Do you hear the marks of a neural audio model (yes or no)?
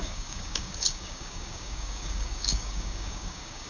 yes